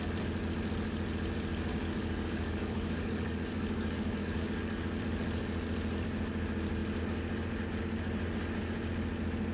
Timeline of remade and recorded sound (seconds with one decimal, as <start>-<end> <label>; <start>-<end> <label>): 0.0-1.7 recorded; 1.7-5.0 remade; 5.0-9.5 recorded